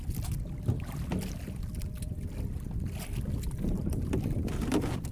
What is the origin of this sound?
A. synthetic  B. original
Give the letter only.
B